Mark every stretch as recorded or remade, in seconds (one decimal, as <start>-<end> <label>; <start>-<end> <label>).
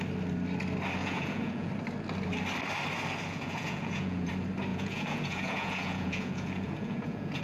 0.0-1.0 recorded; 1.0-1.7 remade; 1.7-3.3 recorded; 3.3-4.3 remade; 4.3-4.7 recorded; 4.7-7.4 remade